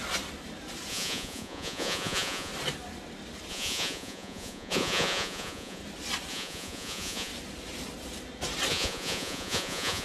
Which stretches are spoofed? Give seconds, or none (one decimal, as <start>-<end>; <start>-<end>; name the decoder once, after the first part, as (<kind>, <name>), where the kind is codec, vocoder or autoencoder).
0.9-2.5 (vocoder, Vocos); 3.5-5.8; 6.3-7.3; 8.7-10.0

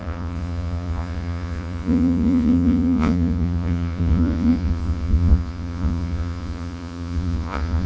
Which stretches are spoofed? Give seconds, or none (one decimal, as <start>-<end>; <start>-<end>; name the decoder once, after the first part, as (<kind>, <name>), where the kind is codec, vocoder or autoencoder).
0.0-7.9 (vocoder, Vocos)

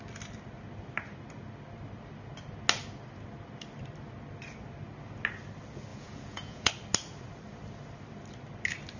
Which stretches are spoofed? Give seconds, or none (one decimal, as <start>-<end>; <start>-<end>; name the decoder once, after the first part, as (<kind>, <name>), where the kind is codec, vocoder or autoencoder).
5.9-6.7 (vocoder, Vocos)

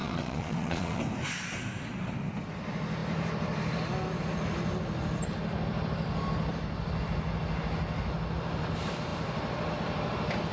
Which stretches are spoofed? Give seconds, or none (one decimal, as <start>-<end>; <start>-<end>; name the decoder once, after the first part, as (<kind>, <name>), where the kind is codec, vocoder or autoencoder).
0.0-1.0 (vocoder, Vocos)